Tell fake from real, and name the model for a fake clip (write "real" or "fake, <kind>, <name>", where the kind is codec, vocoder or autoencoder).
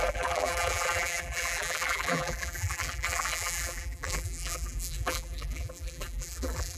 fake, vocoder, BigVGAN v2